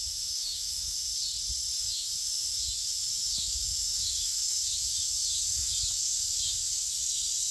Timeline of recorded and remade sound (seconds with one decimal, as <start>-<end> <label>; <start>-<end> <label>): 0.0-1.1 remade; 1.1-1.8 recorded; 1.8-7.5 remade